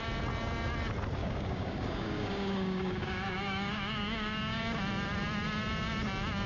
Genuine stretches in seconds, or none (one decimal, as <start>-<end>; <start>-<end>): 0.0-1.2; 4.6-6.5

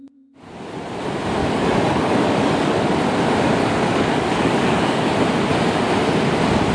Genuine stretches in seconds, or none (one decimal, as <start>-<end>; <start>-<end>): 0.0-1.4; 2.9-3.6; 5.1-6.7

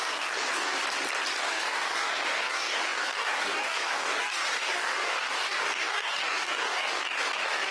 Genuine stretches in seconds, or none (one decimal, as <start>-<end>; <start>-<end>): 0.8-1.4

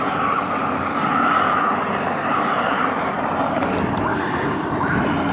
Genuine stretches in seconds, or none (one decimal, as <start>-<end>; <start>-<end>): 0.0-4.1; 4.7-5.3

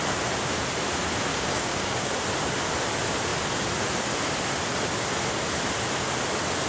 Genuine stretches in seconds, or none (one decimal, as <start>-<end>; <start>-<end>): 0.0-1.3; 2.1-6.7

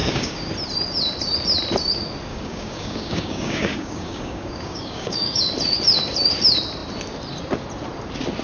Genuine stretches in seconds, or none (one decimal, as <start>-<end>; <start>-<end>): 0.5-2.3; 5.4-8.4

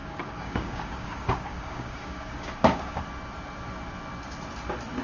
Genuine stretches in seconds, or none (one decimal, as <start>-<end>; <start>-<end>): 3.0-5.0

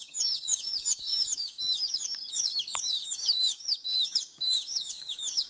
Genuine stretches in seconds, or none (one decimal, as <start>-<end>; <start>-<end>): none